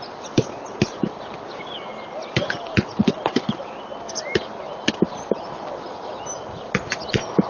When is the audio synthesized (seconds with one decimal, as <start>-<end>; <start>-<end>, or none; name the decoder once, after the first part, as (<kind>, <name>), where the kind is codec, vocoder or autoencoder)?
none